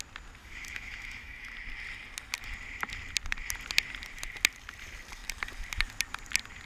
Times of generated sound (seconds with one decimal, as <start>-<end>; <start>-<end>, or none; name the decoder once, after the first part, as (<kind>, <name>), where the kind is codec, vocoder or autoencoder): 0.4-1.5 (autoencoder, DAC-VAE)